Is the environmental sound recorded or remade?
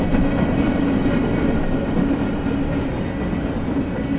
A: recorded